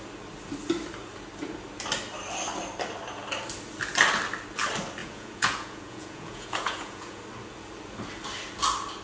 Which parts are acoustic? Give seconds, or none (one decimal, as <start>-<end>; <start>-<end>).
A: 0.0-5.0; 7.2-9.0

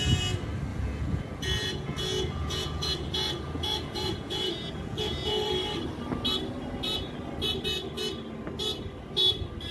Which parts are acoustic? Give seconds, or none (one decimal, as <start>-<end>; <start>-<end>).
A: 0.0-0.7; 5.5-9.7

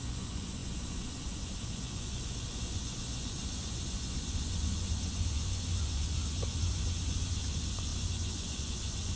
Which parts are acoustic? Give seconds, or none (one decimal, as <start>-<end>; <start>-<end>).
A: none

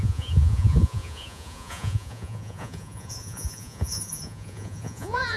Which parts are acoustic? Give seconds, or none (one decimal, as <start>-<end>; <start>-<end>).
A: none

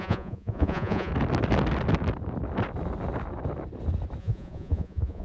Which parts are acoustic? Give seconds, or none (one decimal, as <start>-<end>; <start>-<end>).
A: 1.1-4.2